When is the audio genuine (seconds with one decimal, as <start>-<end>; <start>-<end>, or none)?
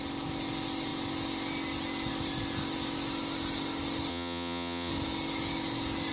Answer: 0.0-4.1; 4.9-6.1